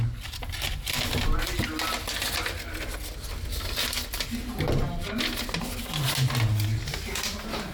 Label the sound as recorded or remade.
recorded